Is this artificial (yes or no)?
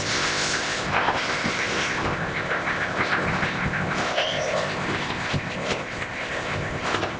yes